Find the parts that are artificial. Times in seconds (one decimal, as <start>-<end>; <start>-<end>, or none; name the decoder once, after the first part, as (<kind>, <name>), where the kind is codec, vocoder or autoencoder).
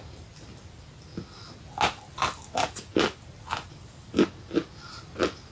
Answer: none